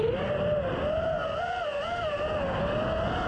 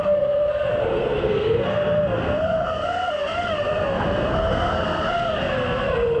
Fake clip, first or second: second